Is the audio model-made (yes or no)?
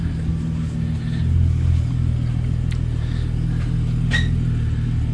no